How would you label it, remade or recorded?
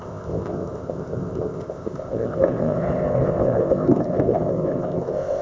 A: remade